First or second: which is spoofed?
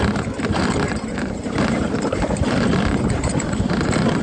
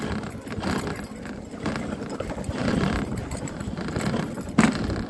first